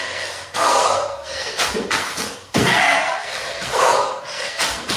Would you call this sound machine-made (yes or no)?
yes